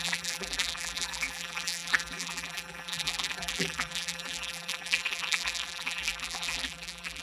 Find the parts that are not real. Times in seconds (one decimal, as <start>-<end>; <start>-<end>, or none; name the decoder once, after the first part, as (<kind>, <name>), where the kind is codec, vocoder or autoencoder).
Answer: 0.0-7.2 (vocoder, BigVGAN v2)